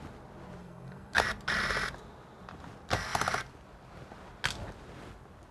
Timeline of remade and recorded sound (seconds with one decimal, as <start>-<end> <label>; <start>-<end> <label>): 0.0-0.6 recorded; 0.6-1.2 remade; 1.2-5.5 recorded